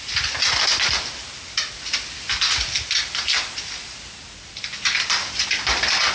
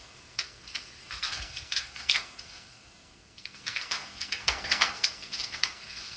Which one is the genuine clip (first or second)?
first